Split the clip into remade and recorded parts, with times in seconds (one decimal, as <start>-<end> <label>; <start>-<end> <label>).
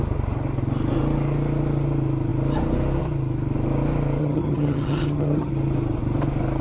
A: 0.0-4.2 recorded; 4.2-5.5 remade; 5.5-6.6 recorded